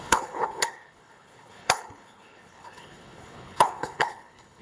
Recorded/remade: remade